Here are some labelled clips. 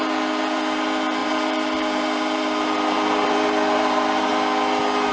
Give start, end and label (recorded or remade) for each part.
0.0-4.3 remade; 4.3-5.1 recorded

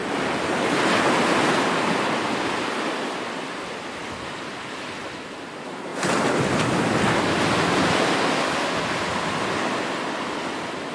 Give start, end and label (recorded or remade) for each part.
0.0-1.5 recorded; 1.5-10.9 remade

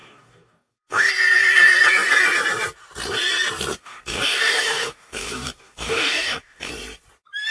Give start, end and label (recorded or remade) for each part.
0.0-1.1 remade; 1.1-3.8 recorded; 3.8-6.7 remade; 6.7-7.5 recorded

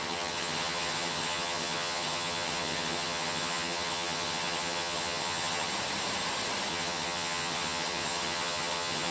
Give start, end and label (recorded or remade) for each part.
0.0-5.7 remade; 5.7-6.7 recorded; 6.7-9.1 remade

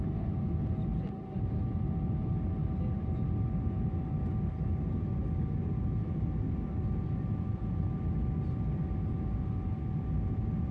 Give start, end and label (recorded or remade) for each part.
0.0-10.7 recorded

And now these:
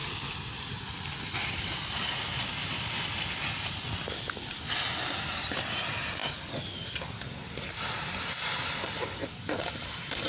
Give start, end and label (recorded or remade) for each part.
0.0-10.3 recorded